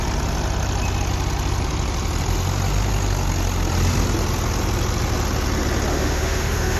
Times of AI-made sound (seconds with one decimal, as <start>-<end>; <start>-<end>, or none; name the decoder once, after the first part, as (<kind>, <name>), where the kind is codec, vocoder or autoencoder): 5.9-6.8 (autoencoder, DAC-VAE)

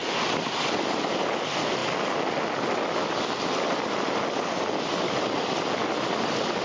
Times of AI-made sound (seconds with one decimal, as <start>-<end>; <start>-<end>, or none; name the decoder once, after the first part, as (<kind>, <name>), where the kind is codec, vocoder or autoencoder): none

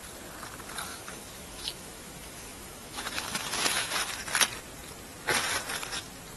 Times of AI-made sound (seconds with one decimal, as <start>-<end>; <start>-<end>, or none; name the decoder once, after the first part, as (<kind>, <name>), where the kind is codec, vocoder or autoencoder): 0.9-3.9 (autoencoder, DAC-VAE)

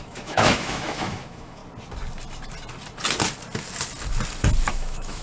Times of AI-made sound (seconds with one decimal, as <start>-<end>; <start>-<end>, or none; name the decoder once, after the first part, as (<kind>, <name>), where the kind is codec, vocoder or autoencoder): 0.0-1.6 (autoencoder, DAC-VAE); 4.7-5.2

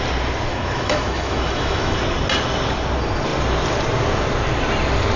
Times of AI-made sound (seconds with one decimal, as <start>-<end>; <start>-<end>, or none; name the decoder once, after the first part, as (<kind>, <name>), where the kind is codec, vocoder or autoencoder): 0.5-2.0 (autoencoder, DAC-VAE)

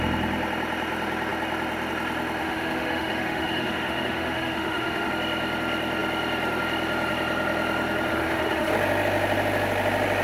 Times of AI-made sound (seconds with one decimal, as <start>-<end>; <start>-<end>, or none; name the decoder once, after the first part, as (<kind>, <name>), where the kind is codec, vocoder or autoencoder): 2.4-5.1 (autoencoder, DAC-VAE); 8.1-8.7